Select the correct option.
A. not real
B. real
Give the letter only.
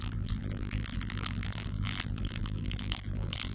A